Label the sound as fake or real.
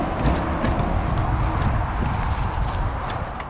real